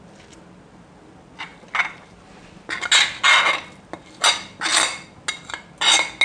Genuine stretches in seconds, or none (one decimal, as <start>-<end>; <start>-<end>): 0.0-6.2